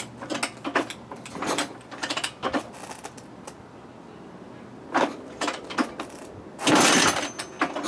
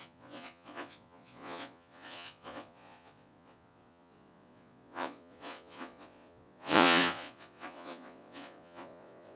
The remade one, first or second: second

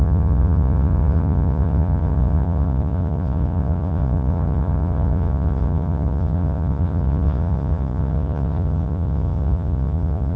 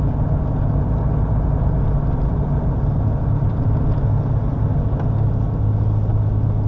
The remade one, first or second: first